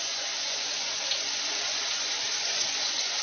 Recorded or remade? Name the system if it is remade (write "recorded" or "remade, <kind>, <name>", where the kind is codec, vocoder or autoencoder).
remade, vocoder, Vocos